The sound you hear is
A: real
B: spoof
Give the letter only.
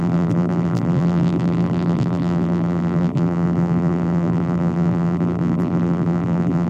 B